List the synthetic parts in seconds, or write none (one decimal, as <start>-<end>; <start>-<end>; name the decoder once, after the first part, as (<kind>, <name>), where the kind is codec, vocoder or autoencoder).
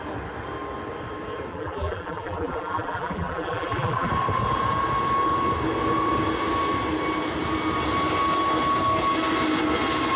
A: 1.5-4.1 (vocoder, BigVGAN v2)